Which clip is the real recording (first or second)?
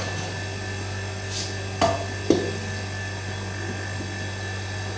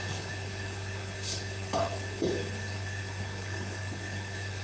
first